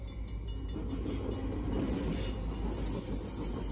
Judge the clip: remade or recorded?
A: recorded